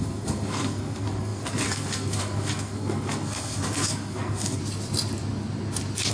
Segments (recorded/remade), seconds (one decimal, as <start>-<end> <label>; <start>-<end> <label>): 0.0-4.6 remade; 4.6-6.1 recorded